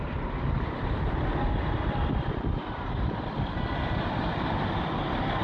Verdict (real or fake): real